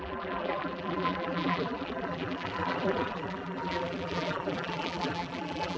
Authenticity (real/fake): fake